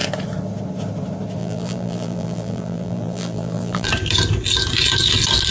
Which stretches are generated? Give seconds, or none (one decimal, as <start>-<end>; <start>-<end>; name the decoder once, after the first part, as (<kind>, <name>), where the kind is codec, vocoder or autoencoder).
1.4-3.9 (vocoder, BigVGAN v2)